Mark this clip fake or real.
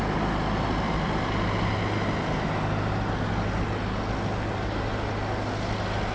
real